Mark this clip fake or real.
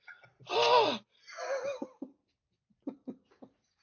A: real